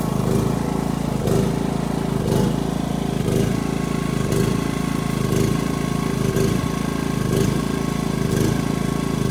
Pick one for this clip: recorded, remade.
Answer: recorded